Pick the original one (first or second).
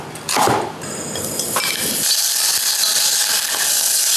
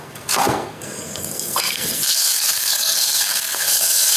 first